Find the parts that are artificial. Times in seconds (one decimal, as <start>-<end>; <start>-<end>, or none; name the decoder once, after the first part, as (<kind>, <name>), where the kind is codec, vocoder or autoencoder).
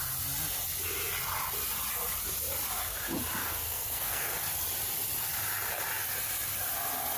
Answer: 3.4-4.3 (codec, SNAC)